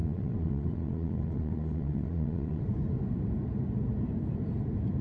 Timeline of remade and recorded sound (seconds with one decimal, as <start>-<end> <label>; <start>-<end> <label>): 0.0-2.6 remade; 2.6-5.0 recorded